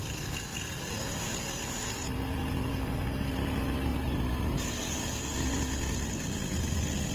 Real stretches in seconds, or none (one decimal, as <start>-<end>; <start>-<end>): 0.0-2.8; 3.3-7.1